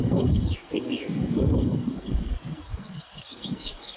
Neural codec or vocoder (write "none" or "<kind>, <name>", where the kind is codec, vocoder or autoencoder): codec, SNAC